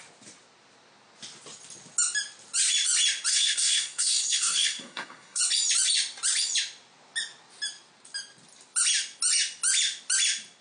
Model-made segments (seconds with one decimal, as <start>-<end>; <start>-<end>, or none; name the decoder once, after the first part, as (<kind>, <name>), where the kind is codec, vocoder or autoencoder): 3.3-5.4 (codec, SNAC)